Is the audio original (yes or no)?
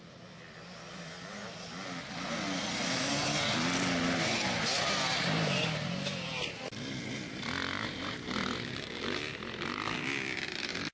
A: yes